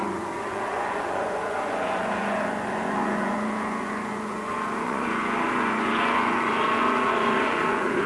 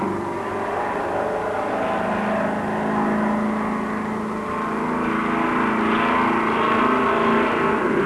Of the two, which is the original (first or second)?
second